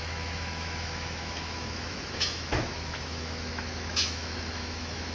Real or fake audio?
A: fake